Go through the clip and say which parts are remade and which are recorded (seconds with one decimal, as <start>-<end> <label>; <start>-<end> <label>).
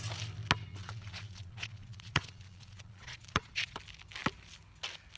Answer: 0.0-0.7 recorded; 0.7-3.8 remade; 3.8-5.2 recorded